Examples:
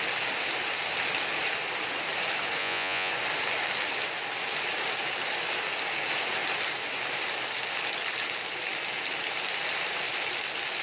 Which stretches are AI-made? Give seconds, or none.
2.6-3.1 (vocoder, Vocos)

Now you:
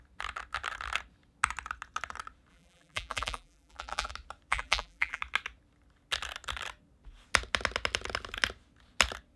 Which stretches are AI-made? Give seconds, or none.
2.5-4.1 (vocoder, BigVGAN v2); 4.5-5.2

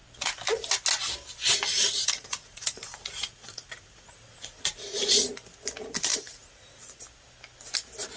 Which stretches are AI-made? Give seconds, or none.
1.6-5.2 (vocoder, Vocos); 6.1-7.0

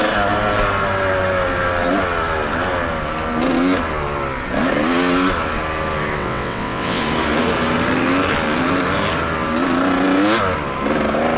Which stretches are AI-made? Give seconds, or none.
6.2-7.0 (vocoder, WaveNeXt)

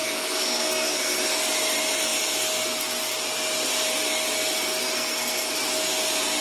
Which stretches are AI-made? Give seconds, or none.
0.0-1.2 (codec, SNAC); 4.8-5.5